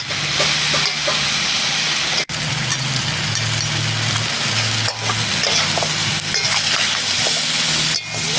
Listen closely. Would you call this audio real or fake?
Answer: real